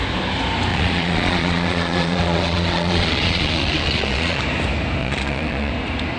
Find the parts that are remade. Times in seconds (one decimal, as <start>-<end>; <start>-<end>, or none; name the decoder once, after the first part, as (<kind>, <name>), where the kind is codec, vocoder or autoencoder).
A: 0.7-4.4 (vocoder, Vocos); 5.0-5.7